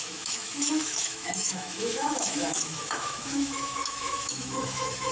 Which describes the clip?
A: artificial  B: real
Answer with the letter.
A